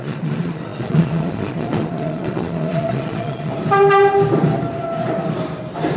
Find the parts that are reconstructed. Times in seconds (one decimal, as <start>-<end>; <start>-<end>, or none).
0.0-3.5